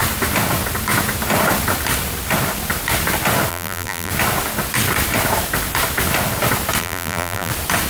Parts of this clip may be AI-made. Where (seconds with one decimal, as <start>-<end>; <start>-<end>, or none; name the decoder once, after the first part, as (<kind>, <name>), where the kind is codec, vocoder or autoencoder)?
3.5-4.1 (vocoder, BigVGAN v2); 6.8-7.5